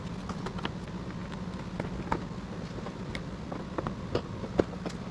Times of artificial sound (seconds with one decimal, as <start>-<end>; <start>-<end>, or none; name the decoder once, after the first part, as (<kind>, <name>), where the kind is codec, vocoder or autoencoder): none